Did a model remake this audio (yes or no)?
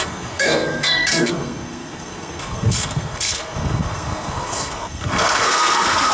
yes